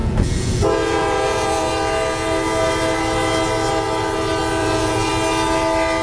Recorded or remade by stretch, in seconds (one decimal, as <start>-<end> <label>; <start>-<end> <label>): 0.0-1.7 remade; 1.7-4.6 recorded; 4.6-5.1 remade; 5.1-6.0 recorded